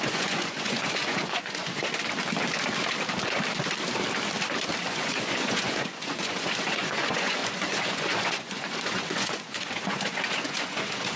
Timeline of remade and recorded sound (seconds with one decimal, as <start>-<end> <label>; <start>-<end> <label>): 0.0-1.8 remade; 1.8-4.9 recorded; 4.9-11.2 remade